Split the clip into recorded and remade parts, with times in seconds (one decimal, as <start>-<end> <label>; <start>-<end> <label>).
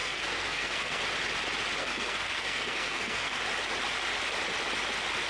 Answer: 0.0-1.0 remade; 1.0-1.8 recorded; 1.8-3.4 remade; 3.4-5.3 recorded